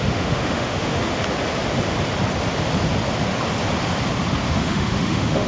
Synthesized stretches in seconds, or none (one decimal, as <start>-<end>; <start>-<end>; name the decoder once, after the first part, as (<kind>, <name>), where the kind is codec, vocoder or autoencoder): 0.0-1.2 (autoencoder, DAC-VAE); 4.5-5.5